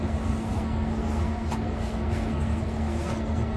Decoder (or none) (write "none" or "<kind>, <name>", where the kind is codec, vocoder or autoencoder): codec, SNAC